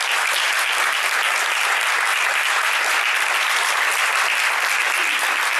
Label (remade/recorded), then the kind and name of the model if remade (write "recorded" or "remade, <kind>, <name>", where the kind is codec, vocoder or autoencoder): recorded